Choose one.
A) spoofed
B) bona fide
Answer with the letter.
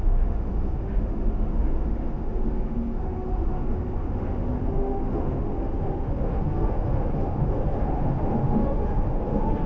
A